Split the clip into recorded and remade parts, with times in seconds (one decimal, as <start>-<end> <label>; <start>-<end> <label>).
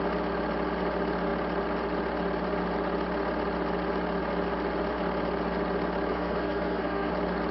0.0-6.1 recorded; 6.1-7.1 remade; 7.1-7.5 recorded